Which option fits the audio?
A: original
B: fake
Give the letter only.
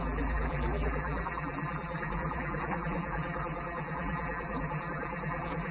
B